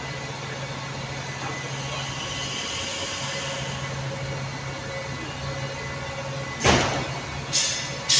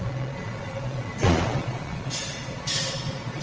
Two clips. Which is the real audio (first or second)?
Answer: first